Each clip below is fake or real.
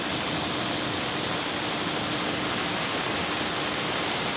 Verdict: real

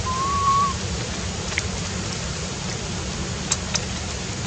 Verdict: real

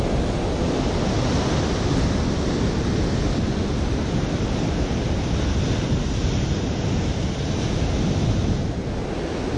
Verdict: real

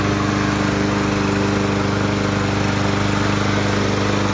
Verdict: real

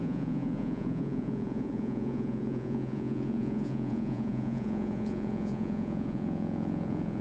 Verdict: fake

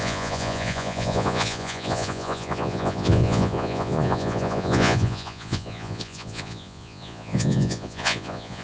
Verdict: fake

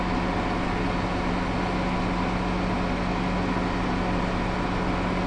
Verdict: real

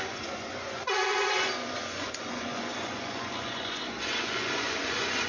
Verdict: fake